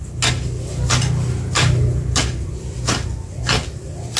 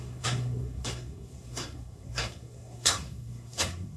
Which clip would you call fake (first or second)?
second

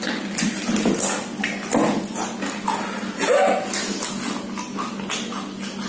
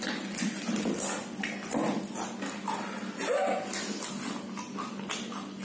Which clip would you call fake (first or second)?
second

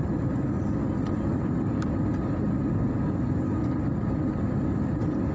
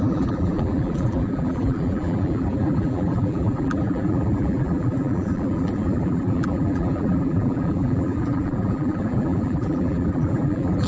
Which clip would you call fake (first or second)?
second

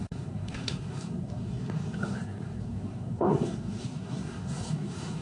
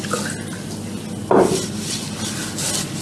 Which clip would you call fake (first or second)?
first